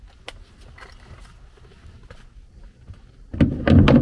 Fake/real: real